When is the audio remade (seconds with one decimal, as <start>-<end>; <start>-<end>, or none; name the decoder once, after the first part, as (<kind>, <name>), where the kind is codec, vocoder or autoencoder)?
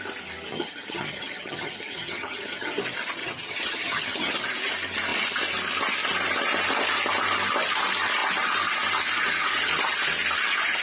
0.5-2.7 (vocoder, HiFi-GAN); 3.2-4.4